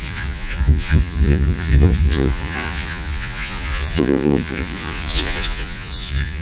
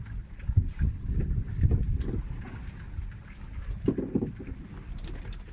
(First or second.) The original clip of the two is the second